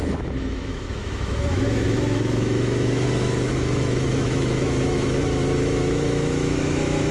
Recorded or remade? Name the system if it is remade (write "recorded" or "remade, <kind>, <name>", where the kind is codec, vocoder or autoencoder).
remade, autoencoder, DAC-VAE